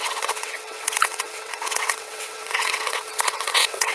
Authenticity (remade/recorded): remade